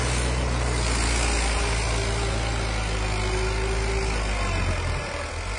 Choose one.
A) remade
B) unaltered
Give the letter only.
B